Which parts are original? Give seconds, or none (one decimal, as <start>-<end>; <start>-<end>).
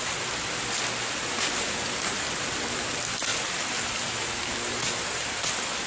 0.0-5.9